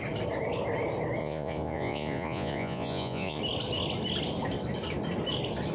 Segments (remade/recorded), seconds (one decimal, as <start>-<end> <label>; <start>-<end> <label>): 0.0-1.2 recorded; 1.2-3.4 remade; 3.4-5.7 recorded